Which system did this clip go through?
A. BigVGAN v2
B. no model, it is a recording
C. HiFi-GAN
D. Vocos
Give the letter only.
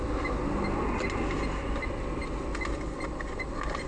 B